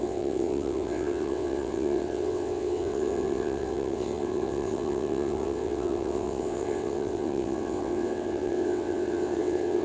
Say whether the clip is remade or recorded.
remade